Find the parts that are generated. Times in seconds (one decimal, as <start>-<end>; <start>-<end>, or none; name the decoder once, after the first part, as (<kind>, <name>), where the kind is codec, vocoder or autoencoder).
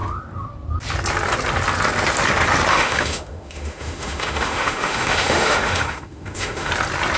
2.7-6.7 (autoencoder, DAC-VAE)